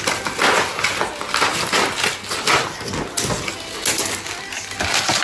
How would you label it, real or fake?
real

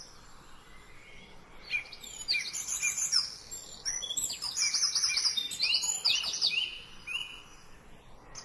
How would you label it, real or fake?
real